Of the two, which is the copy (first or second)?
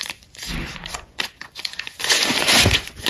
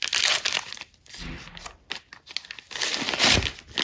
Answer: first